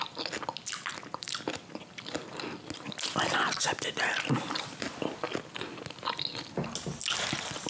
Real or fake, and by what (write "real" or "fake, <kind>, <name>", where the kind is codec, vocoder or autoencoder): real